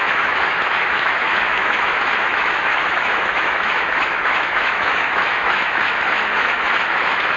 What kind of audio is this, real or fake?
fake